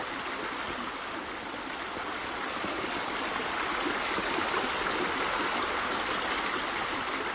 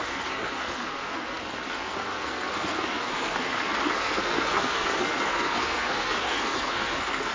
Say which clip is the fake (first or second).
second